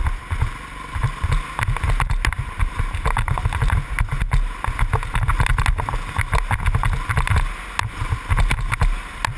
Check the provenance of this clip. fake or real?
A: real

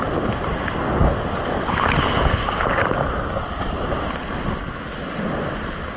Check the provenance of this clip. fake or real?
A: real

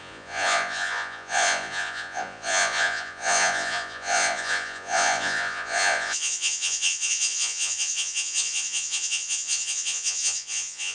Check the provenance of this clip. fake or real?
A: fake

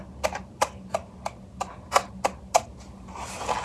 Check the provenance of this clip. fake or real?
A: real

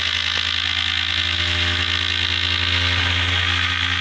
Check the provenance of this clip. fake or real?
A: real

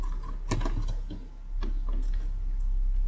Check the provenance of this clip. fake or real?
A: real